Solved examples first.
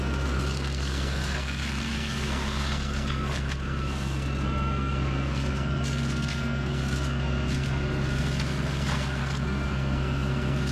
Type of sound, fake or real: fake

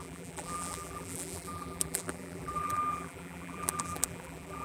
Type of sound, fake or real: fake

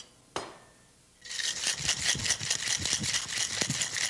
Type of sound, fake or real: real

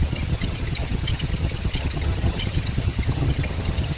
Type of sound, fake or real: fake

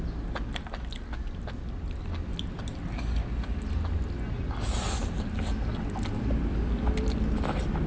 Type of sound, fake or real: real